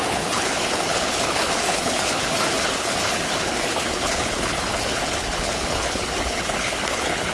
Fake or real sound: fake